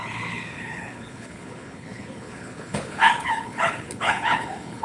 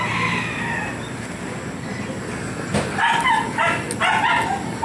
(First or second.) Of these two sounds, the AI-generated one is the first